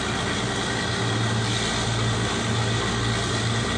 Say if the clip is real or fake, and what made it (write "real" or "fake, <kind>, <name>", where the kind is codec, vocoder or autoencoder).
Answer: real